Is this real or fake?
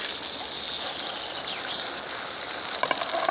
real